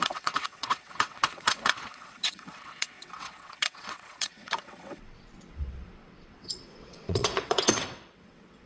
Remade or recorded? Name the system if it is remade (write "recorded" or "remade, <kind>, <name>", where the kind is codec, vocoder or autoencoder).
remade, vocoder, WaveNeXt